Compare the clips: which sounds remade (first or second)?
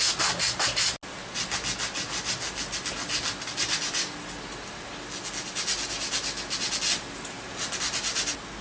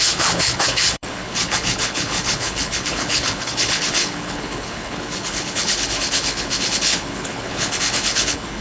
second